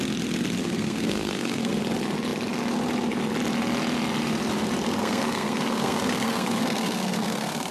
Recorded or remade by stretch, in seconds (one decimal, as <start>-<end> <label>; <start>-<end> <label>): 0.0-0.6 recorded; 0.6-1.7 remade; 1.7-5.0 recorded; 5.0-7.7 remade